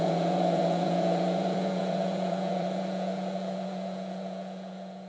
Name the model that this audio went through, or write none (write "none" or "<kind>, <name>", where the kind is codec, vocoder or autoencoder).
vocoder, Vocos